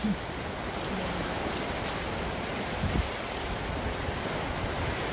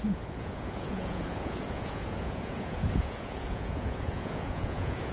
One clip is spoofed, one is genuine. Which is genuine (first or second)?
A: first